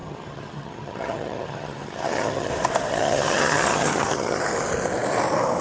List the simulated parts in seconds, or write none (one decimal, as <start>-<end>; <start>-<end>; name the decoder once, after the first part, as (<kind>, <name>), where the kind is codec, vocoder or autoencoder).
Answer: 0.0-2.5 (vocoder, HiFi-GAN); 2.9-4.4